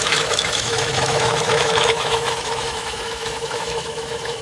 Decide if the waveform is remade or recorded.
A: remade